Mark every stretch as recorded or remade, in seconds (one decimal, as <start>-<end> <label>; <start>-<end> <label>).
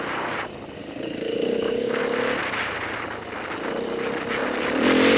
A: 0.0-0.8 recorded; 0.8-2.0 remade; 2.0-5.2 recorded